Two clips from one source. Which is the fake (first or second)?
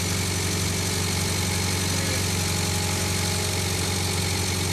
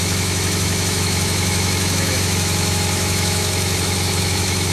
second